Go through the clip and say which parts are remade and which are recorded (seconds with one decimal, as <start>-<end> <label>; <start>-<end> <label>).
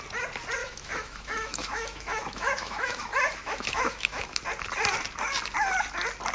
0.0-0.6 recorded; 0.6-4.4 remade; 4.4-6.3 recorded